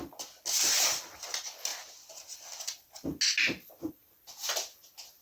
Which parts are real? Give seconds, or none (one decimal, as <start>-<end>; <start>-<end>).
0.0-5.2